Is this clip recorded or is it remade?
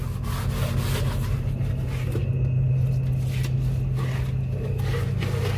recorded